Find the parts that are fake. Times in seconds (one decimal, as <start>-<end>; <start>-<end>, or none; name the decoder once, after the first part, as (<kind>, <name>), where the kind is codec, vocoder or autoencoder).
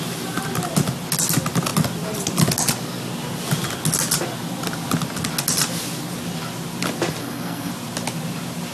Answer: 7.2-7.7 (codec, SNAC)